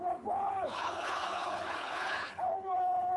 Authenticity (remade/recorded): remade